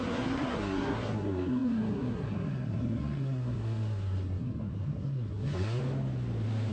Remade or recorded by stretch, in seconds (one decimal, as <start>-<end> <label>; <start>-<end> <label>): 0.0-5.8 remade; 5.8-6.7 recorded